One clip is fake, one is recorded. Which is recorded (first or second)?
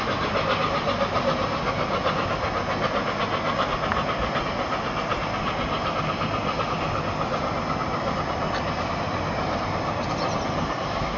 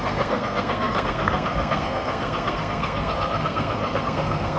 first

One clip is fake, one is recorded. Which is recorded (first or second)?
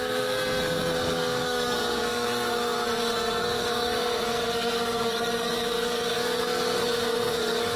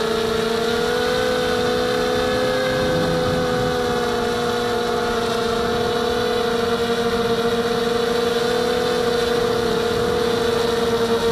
second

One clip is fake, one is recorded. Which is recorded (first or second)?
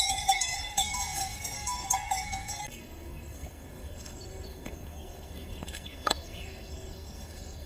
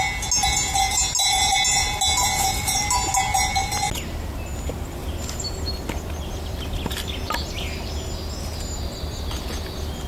second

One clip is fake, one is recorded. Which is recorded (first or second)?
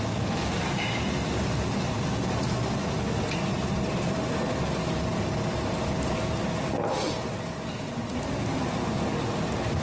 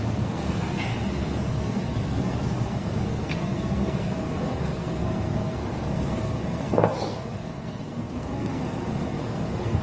first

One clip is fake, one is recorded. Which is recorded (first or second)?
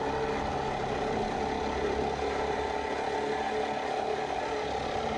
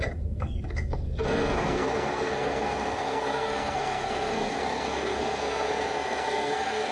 first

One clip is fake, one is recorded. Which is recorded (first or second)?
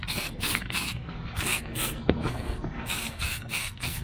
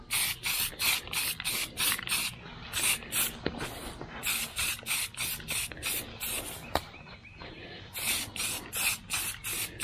second